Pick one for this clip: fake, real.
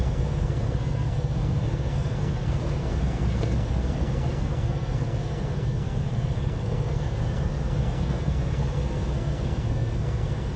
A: fake